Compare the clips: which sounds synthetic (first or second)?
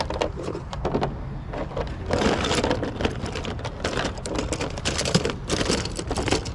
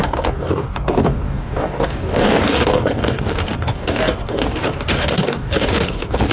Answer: second